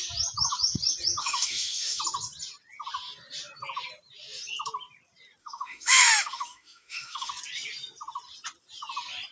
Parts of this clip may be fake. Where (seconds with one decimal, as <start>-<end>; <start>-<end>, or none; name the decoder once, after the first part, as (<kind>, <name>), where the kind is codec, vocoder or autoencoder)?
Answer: 1.2-2.0 (autoencoder, DAC-VAE); 5.4-7.3